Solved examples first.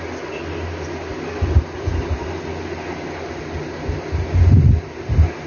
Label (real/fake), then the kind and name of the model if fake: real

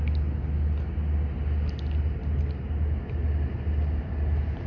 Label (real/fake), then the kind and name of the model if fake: real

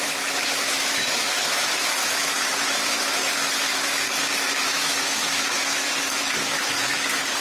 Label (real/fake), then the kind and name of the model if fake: fake, autoencoder, DAC-VAE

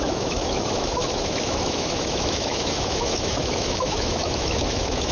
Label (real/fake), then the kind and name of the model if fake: fake, autoencoder, DAC-VAE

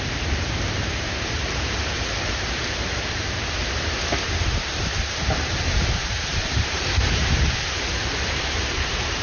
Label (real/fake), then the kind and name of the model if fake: fake, vocoder, BigVGAN v2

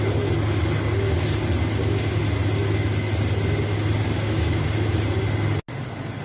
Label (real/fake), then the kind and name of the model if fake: real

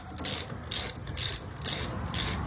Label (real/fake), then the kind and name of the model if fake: real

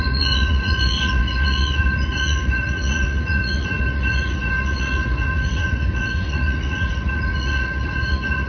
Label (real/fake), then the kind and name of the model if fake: fake, vocoder, Vocos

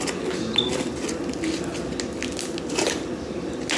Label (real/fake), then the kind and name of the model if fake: real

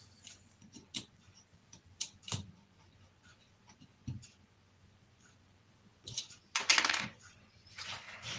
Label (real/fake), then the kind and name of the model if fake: fake, vocoder, Vocos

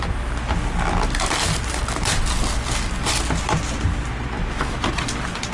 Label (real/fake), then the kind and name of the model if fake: real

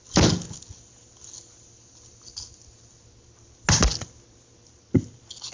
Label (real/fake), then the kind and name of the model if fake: real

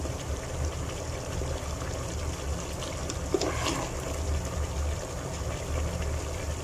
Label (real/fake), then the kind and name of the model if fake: real